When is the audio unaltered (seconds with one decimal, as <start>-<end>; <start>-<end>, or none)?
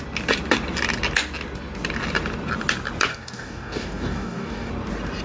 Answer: 0.0-3.1; 4.7-5.2